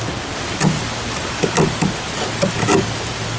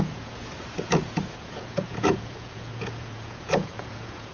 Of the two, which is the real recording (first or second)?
first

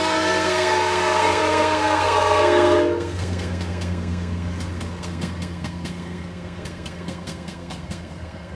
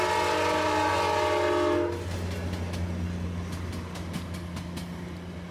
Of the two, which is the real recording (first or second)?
second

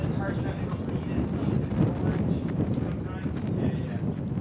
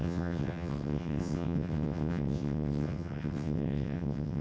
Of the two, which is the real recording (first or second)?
first